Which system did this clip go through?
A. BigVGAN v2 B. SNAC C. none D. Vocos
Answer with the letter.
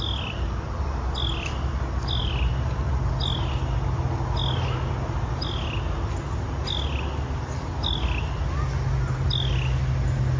C